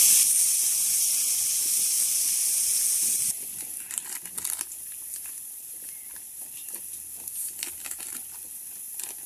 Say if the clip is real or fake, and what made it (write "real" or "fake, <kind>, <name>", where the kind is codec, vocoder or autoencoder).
fake, vocoder, BigVGAN v2